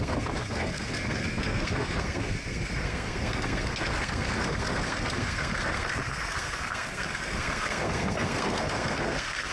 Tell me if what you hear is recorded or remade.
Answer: remade